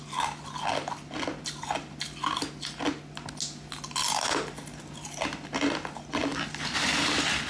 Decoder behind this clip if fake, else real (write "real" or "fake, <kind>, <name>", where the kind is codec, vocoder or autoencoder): real